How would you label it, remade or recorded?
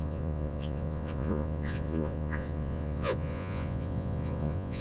remade